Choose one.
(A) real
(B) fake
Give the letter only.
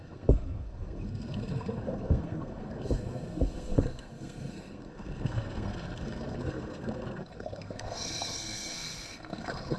B